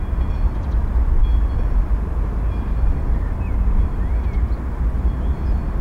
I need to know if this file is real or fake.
real